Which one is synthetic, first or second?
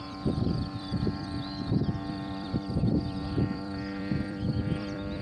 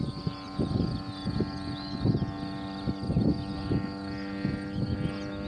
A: first